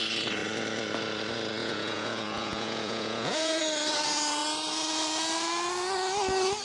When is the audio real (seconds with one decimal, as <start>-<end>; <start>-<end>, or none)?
0.0-1.6; 3.6-6.6